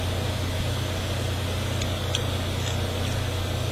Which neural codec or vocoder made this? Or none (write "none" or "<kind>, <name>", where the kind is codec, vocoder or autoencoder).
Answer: none